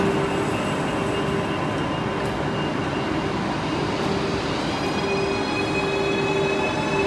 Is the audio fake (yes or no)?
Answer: no